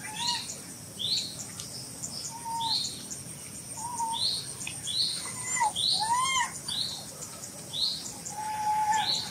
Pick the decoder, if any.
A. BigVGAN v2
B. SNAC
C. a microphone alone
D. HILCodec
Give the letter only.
C